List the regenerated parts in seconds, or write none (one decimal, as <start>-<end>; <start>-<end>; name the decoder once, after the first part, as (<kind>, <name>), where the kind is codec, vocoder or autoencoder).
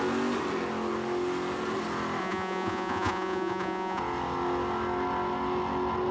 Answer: 2.2-4.0 (vocoder, Vocos)